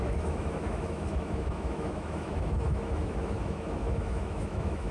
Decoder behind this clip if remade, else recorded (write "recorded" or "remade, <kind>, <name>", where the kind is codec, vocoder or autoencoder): remade, autoencoder, DAC-VAE